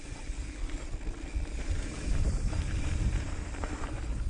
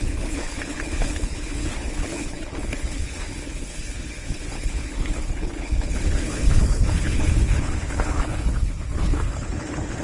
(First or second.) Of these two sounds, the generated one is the second